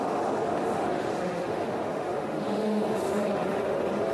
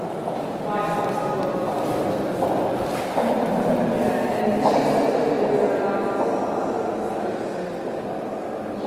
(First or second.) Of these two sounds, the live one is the second